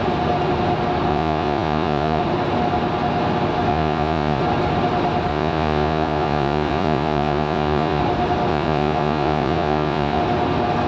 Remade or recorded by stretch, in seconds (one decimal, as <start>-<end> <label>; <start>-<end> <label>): 0.0-1.1 recorded; 1.1-2.2 remade; 2.2-3.7 recorded; 3.7-4.4 remade; 4.4-5.3 recorded; 5.3-8.0 remade; 8.0-8.5 recorded; 8.5-10.2 remade; 10.2-10.9 recorded